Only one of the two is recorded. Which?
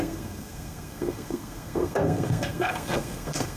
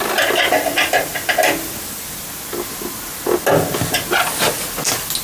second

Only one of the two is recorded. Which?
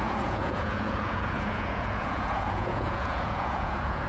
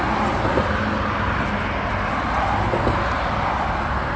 second